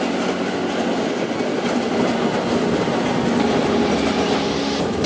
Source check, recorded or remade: recorded